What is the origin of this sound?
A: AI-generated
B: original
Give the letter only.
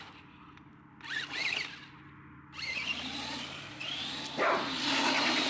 B